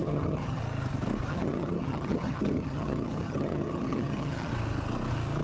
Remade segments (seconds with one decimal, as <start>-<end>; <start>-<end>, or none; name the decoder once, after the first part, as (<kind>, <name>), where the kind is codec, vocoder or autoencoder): 0.0-0.6 (vocoder, HiFi-GAN); 1.3-4.5